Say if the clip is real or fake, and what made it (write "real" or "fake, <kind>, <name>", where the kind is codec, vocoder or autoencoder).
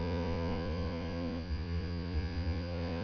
fake, vocoder, Vocos